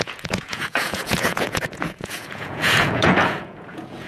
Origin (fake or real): fake